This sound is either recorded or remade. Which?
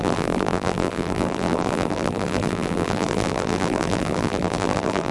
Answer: remade